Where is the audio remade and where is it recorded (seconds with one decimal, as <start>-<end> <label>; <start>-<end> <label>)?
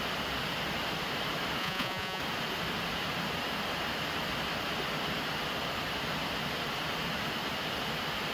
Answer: 0.0-1.6 recorded; 1.6-2.2 remade; 2.2-8.3 recorded